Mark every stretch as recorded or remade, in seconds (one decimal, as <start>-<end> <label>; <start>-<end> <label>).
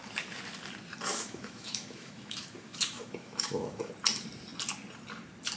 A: 0.0-1.1 recorded; 1.1-3.9 remade; 3.9-5.6 recorded